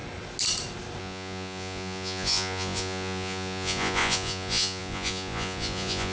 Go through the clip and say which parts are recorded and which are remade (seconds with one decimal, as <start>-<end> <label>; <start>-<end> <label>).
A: 0.0-1.0 recorded; 1.0-6.1 remade